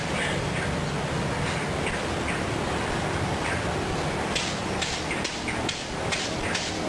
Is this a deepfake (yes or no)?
no